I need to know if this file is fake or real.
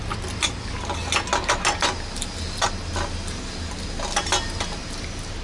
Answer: real